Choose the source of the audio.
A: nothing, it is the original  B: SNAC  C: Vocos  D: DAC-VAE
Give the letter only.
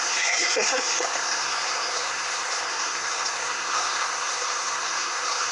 B